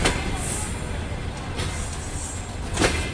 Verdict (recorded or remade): recorded